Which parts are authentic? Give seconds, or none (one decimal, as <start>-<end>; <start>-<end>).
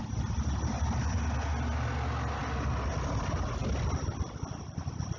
0.0-5.2